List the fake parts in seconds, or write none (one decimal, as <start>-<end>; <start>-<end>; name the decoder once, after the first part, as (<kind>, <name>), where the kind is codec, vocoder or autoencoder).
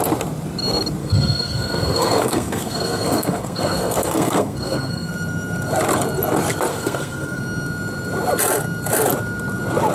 1.0-5.1 (codec, SNAC); 6.7-7.4